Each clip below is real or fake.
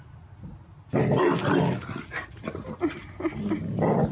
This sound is real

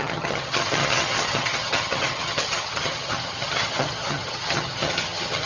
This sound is fake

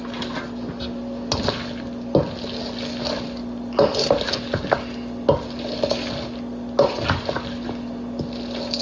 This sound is real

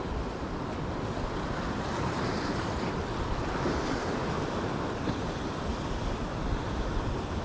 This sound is real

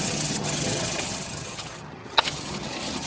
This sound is fake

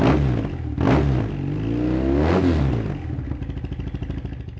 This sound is real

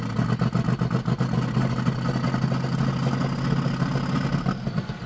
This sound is real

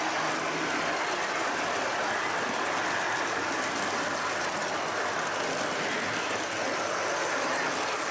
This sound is real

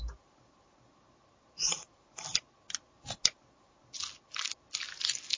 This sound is real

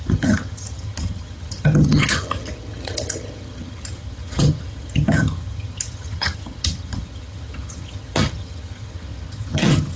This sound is fake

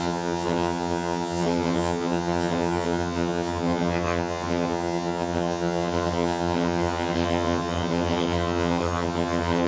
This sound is fake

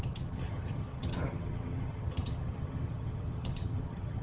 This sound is fake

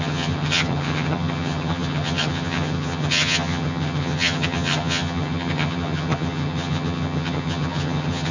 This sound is fake